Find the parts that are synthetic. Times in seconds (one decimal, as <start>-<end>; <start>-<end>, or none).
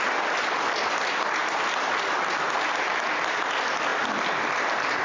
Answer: none